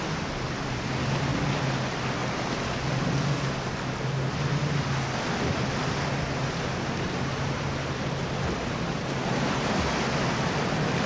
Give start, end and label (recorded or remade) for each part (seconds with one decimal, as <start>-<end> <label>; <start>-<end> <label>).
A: 0.0-11.1 recorded